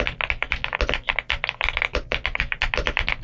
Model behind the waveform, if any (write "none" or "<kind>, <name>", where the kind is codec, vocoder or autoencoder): none